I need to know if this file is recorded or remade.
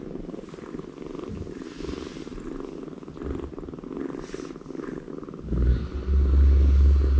recorded